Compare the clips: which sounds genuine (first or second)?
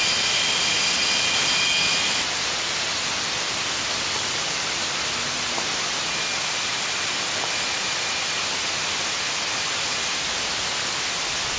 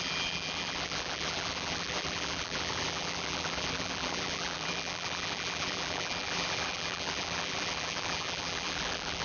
first